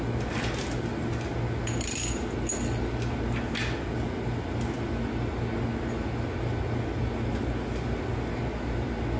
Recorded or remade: recorded